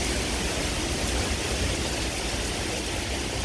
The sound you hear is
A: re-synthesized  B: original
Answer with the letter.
B